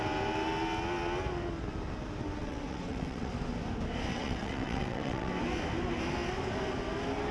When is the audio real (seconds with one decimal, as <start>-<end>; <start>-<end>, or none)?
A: 0.0-2.4; 3.3-4.1; 5.3-7.3

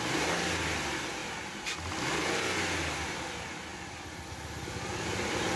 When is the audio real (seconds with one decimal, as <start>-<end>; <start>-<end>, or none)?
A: 0.0-5.6

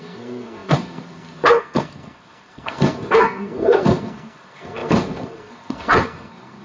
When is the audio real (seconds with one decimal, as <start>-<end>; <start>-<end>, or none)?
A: none

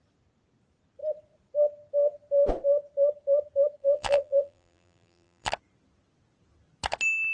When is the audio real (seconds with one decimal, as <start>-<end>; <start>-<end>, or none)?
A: 0.0-3.8; 5.5-7.3

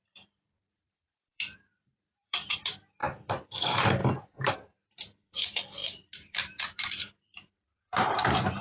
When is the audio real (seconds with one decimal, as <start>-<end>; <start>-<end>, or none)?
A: 3.0-3.6

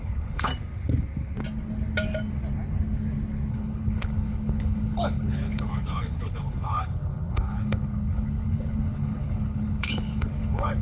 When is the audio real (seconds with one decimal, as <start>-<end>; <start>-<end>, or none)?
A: 0.5-3.5

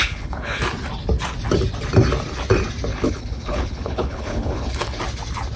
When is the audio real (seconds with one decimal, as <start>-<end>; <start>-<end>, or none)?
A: 0.6-2.9; 5.0-5.6